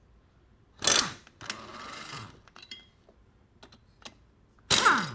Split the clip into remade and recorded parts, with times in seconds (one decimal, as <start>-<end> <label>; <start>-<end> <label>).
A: 0.0-1.7 recorded; 1.7-3.4 remade; 3.4-5.1 recorded